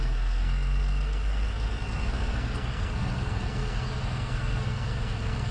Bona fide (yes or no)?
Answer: no